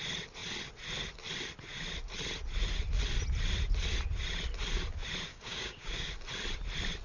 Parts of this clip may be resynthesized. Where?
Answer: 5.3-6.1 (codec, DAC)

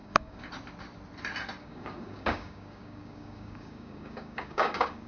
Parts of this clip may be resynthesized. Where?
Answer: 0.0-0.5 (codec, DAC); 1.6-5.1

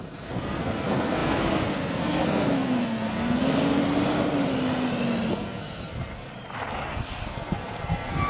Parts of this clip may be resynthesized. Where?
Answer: 0.0-3.8 (codec, SNAC); 5.3-6.3; 6.9-8.3

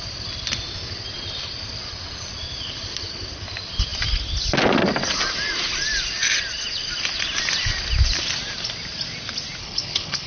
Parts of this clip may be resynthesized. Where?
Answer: 9.6-10.3 (codec, HILCodec)